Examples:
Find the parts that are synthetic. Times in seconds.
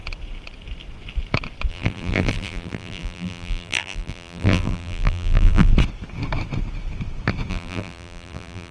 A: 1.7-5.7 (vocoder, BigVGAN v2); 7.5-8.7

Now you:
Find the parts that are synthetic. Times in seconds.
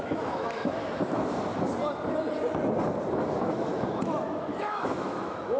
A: 0.0-1.5 (autoencoder, DAC-VAE); 3.1-5.6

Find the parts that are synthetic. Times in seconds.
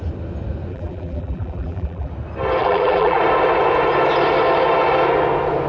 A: 0.7-2.1 (vocoder, BigVGAN v2); 2.6-3.2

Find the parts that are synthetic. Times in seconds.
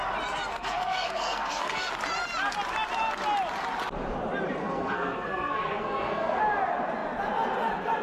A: 0.5-1.9 (codec, SNAC); 4.6-6.4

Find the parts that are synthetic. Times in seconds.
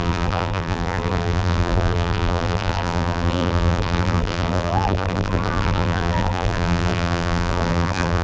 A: 0.0-8.2 (vocoder, BigVGAN v2)